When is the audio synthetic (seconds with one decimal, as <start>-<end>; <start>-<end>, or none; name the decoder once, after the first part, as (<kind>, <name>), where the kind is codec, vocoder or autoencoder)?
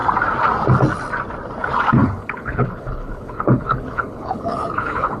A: 2.0-5.2 (codec, HILCodec)